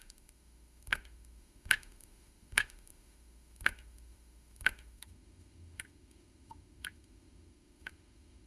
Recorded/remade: remade